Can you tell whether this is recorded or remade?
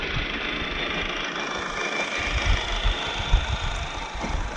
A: recorded